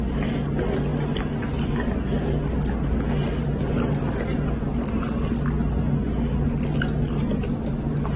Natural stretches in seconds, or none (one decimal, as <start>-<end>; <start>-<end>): 0.0-8.2